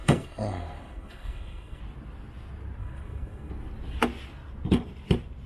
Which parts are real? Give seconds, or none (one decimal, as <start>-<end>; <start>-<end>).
1.8-2.8; 3.5-5.5